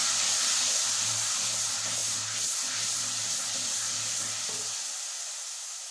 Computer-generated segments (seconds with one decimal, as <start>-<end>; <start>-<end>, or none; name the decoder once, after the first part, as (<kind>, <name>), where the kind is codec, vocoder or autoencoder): none